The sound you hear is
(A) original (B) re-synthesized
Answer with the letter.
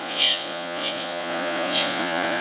B